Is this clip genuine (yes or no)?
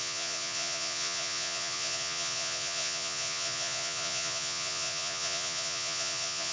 no